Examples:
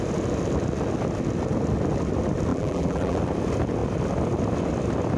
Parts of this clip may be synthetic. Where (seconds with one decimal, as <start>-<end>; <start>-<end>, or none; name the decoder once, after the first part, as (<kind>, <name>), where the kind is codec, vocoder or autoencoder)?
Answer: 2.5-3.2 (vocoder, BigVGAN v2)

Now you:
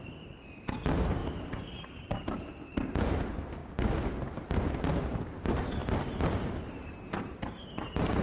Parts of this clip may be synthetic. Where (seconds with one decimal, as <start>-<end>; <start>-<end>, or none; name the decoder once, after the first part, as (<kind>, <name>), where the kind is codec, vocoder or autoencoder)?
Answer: 0.0-3.6 (vocoder, BigVGAN v2); 4.1-8.2

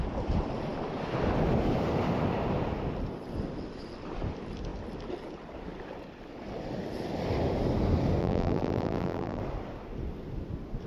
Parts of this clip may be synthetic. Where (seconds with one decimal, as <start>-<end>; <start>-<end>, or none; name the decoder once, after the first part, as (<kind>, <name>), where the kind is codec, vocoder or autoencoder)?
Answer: 8.2-9.4 (vocoder, BigVGAN v2)

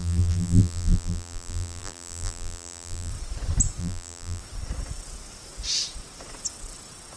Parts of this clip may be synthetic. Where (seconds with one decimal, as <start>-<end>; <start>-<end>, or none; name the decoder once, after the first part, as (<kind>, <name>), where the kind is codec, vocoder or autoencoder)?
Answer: 0.0-3.1 (vocoder, BigVGAN v2); 3.8-4.4

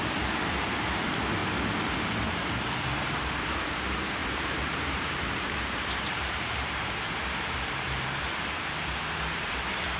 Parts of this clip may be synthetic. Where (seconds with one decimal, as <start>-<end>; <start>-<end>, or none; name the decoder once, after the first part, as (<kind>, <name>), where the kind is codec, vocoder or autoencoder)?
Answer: 1.4-2.0 (vocoder, BigVGAN v2); 4.2-8.2

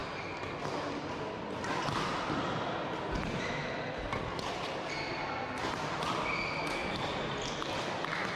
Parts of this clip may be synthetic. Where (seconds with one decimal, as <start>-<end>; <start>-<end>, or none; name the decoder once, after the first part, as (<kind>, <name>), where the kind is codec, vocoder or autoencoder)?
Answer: 2.1-5.1 (vocoder, BigVGAN v2); 6.8-7.7

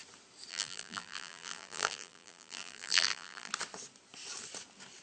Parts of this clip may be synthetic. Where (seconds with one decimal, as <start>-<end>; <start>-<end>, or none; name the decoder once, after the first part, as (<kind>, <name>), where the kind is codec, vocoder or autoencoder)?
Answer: 0.5-3.5 (vocoder, BigVGAN v2)

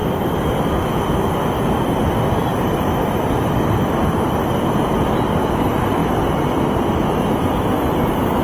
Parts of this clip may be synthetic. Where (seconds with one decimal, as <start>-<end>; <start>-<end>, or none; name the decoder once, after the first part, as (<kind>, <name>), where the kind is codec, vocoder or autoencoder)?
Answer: 0.0-1.6 (vocoder, BigVGAN v2); 2.5-4.7